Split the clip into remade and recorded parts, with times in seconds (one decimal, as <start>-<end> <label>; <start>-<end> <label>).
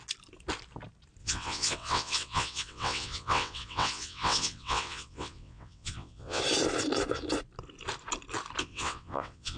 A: 0.0-1.2 recorded; 1.2-6.4 remade; 6.4-8.6 recorded; 8.6-9.6 remade